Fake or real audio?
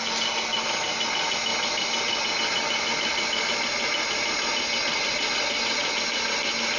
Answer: real